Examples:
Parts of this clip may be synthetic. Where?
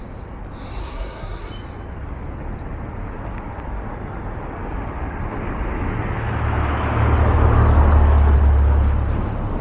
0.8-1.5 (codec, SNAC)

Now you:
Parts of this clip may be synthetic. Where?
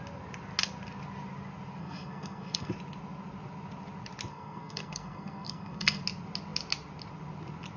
1.8-2.7 (codec, SNAC); 4.3-6.0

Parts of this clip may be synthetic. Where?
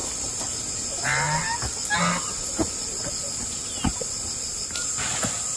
none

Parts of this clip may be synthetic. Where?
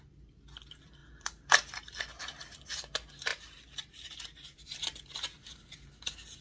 1.0-2.0 (vocoder, BigVGAN v2); 3.3-4.8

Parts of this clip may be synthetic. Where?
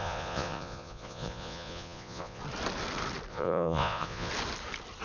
0.0-2.4 (vocoder, Vocos); 3.3-4.3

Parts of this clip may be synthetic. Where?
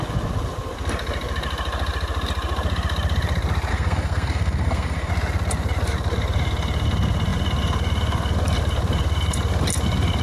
3.7-5.1 (codec, SNAC)